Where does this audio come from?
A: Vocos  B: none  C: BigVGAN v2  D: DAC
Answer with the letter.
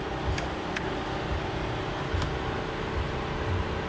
B